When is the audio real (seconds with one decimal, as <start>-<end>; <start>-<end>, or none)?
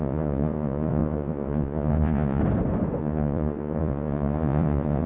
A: 2.4-3.0